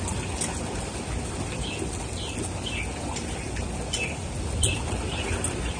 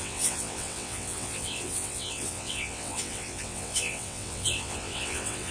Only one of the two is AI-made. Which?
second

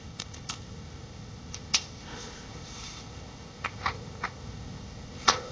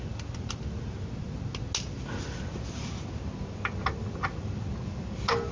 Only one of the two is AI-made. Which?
first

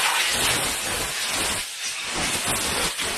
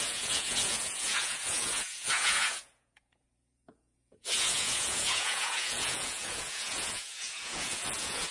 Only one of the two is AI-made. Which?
second